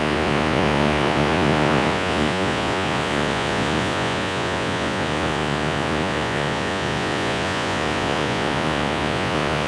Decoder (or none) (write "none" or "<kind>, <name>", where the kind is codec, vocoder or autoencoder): vocoder, Vocos